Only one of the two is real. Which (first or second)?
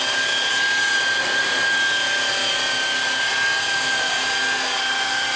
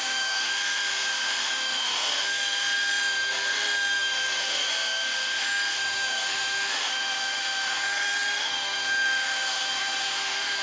first